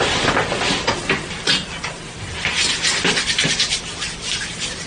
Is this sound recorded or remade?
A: recorded